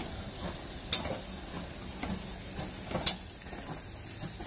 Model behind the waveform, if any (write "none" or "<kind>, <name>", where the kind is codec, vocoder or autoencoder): none